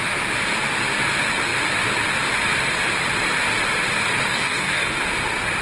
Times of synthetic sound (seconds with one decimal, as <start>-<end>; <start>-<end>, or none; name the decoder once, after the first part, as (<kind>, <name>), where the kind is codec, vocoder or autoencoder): 4.3-4.9 (codec, SNAC)